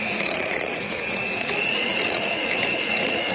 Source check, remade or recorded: remade